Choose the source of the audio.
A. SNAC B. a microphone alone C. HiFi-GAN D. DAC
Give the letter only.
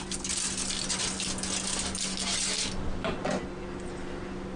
B